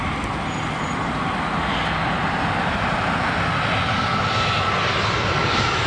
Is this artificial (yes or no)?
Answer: no